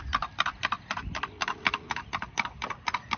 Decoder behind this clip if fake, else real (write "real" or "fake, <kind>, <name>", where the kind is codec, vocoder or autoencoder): real